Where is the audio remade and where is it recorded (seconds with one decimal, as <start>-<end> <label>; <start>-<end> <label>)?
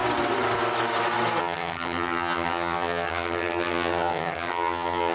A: 0.0-1.4 recorded; 1.4-5.1 remade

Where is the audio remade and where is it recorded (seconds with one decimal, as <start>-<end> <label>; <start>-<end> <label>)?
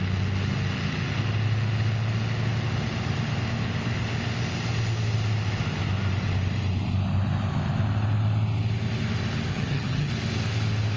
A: 0.0-9.5 recorded; 9.5-10.1 remade; 10.1-11.0 recorded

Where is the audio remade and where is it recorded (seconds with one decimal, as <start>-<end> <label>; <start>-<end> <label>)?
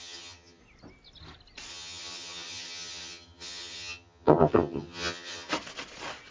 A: 0.0-0.6 remade; 0.6-1.7 recorded; 1.7-5.5 remade; 5.5-6.3 recorded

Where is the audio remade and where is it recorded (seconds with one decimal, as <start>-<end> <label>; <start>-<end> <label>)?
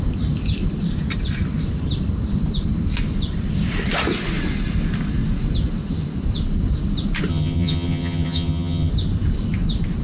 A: 0.0-7.3 recorded; 7.3-8.9 remade; 8.9-10.0 recorded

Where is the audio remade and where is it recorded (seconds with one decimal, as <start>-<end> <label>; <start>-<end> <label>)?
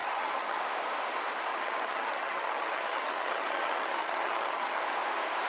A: 0.0-0.6 remade; 0.6-1.5 recorded; 1.5-4.8 remade; 4.8-5.5 recorded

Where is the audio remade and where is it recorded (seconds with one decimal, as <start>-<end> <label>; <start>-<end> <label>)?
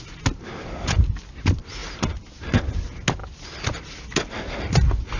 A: 0.0-5.2 recorded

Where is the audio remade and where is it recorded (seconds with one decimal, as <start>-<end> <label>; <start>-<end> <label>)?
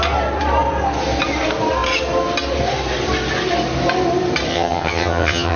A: 0.0-4.5 recorded; 4.5-5.6 remade